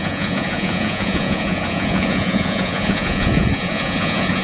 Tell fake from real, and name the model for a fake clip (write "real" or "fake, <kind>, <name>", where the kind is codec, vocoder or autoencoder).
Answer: fake, vocoder, Vocos